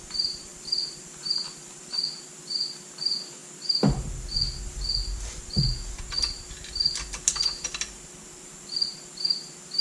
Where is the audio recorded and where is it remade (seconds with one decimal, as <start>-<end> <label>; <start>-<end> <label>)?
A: 0.0-3.4 remade; 3.4-8.2 recorded; 8.2-9.8 remade